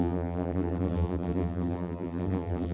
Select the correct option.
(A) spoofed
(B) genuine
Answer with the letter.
A